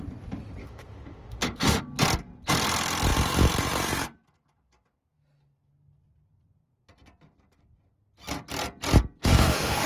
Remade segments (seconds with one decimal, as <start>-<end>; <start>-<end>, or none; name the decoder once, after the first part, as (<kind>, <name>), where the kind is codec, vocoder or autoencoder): 0.6-1.8 (autoencoder, DAC-VAE); 9.2-9.9